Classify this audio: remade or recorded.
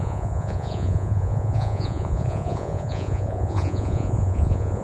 remade